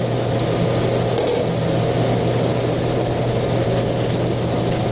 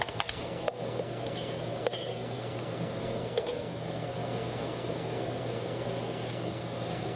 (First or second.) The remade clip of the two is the second